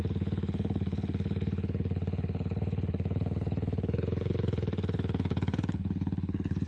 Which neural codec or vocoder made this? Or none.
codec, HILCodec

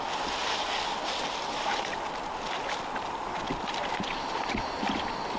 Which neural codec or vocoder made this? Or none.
none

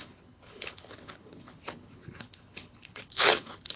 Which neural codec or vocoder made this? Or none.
codec, HILCodec